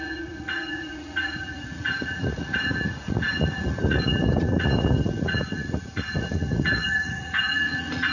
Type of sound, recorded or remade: remade